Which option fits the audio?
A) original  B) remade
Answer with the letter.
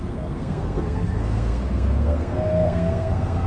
B